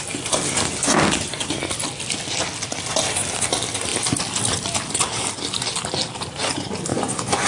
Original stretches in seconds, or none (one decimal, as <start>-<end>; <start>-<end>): 0.0-6.9